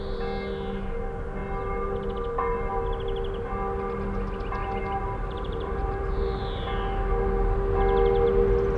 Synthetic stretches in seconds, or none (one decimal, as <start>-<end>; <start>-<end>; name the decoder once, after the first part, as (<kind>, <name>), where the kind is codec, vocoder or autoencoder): 4.6-6.4 (vocoder, BigVGAN v2)